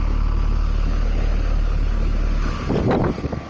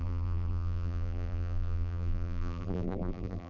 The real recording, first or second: first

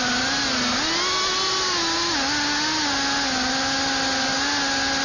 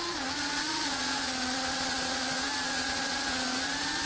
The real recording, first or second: first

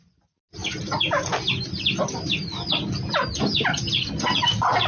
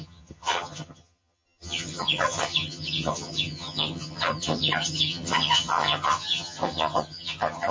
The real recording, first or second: first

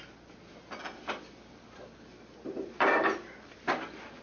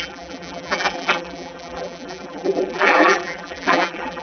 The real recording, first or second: first